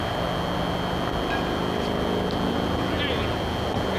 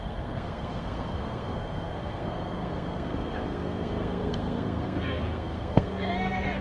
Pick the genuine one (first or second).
first